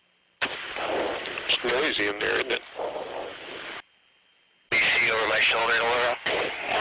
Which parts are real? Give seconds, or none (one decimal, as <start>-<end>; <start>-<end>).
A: 0.0-6.8